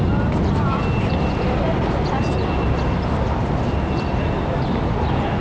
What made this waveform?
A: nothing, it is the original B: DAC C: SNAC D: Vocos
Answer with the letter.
A